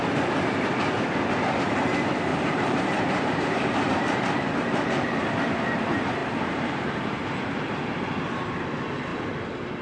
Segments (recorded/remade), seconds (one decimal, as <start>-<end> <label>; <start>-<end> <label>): 0.0-2.3 recorded; 2.3-5.3 remade; 5.3-6.2 recorded; 6.2-7.5 remade; 7.5-9.8 recorded